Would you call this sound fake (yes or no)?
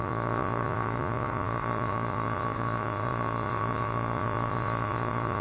yes